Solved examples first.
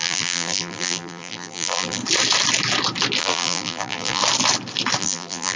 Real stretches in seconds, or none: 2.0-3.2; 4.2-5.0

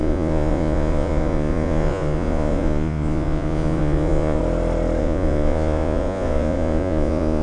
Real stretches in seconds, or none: 4.4-5.0

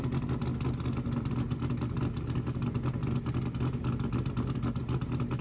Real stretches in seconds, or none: 0.0-5.4

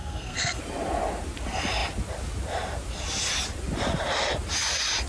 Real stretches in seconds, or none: 0.6-5.1